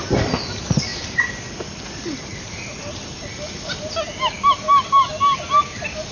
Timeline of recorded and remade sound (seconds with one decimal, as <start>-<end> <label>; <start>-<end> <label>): 0.0-0.9 recorded; 0.9-3.9 remade; 3.9-6.1 recorded